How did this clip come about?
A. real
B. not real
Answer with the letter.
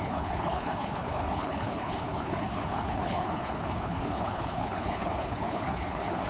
B